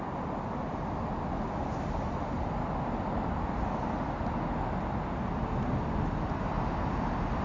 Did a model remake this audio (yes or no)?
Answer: no